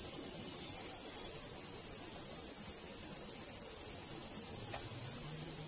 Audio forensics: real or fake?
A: real